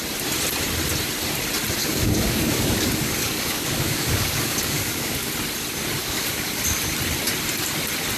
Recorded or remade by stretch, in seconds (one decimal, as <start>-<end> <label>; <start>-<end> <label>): 0.0-1.8 recorded; 1.8-5.3 remade; 5.3-6.0 recorded; 6.0-6.6 remade; 6.6-8.2 recorded